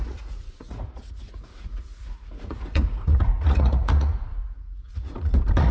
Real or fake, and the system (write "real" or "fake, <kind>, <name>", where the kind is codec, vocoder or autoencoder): fake, vocoder, Vocos